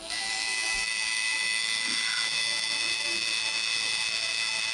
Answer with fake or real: fake